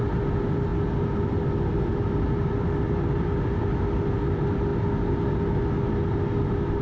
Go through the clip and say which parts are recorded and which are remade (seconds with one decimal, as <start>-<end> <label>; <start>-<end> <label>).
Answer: 0.0-6.8 recorded